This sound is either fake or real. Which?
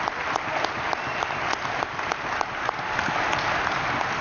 real